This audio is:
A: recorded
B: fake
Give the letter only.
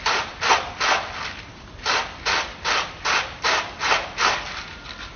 B